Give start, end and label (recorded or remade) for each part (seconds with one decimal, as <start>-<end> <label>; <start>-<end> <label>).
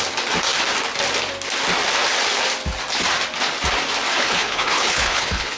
0.0-4.2 recorded; 4.2-5.6 remade